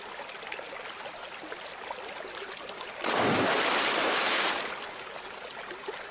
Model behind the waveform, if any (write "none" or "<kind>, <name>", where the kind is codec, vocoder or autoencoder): none